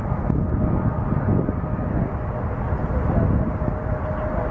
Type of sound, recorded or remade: recorded